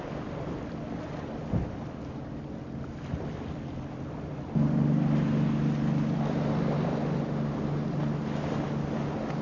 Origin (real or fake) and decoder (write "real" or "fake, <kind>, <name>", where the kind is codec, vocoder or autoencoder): real